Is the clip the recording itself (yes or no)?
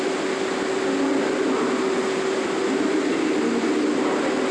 yes